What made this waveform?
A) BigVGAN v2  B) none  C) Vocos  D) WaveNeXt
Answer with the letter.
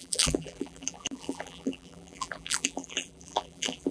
A